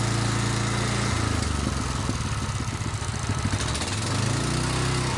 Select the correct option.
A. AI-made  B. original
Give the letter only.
B